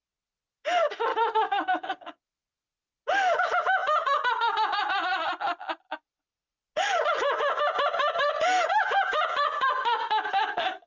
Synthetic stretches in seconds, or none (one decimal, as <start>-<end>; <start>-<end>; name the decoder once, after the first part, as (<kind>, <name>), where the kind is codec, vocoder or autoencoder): 1.1-2.2 (codec, DAC)